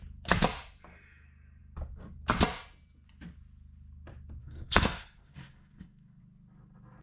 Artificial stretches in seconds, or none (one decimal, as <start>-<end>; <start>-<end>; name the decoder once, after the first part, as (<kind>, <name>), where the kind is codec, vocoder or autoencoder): 4.4-6.2 (codec, SNAC)